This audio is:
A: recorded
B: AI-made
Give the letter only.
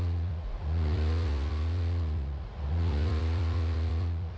B